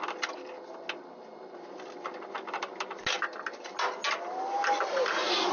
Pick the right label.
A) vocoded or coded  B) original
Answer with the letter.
B